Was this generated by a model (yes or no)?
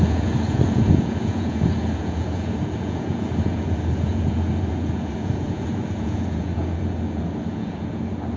yes